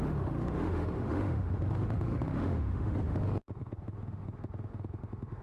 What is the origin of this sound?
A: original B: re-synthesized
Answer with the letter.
B